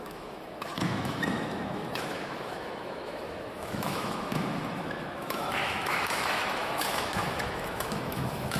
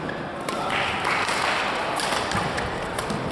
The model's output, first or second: first